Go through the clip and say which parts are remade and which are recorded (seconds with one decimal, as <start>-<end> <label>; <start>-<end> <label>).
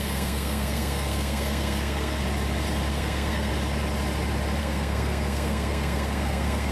0.0-2.2 remade; 2.2-2.9 recorded; 2.9-3.5 remade; 3.5-4.6 recorded; 4.6-6.7 remade